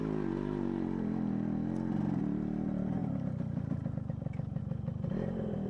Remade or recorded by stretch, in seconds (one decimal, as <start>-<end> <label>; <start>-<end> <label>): 0.0-5.7 recorded